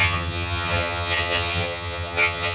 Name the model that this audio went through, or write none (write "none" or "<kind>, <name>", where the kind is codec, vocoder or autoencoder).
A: vocoder, HiFi-GAN